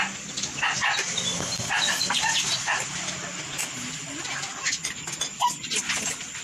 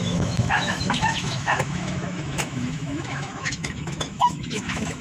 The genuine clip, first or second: first